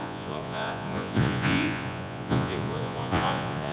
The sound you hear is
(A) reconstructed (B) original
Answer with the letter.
A